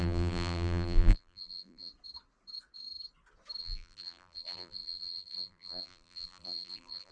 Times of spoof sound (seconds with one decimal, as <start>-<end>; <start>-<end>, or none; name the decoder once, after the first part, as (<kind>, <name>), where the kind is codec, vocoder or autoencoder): 0.0-1.9 (vocoder, BigVGAN v2); 3.6-7.1

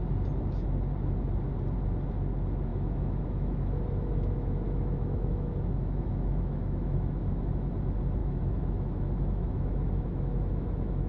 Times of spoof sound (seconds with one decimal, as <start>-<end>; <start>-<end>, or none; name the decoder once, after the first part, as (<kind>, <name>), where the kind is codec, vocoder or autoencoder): 2.7-7.7 (autoencoder, DAC-VAE); 8.2-11.1

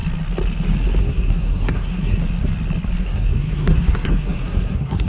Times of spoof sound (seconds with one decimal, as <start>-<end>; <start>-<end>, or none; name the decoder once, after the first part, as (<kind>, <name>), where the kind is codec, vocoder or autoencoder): 1.0-2.2 (codec, SNAC); 3.0-5.1

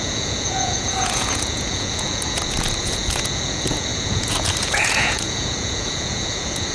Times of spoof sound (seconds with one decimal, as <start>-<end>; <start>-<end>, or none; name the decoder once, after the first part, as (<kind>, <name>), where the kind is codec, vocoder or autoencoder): 0.0-6.7 (vocoder, Vocos)

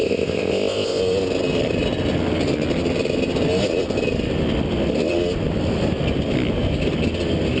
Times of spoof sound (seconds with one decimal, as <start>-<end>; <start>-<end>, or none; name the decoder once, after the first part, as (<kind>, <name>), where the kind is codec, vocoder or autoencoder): 0.0-1.0 (codec, ZipCodec)

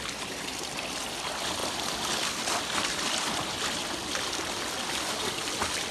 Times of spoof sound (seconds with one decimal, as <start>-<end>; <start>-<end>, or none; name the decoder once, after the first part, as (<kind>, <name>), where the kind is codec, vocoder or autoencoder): none

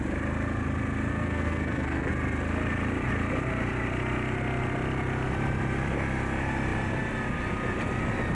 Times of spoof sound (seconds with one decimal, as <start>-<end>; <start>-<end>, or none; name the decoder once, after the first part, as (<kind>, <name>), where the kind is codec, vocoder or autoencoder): 1.1-2.1 (codec, SNAC)